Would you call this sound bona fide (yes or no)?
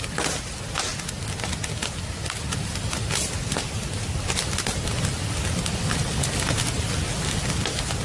yes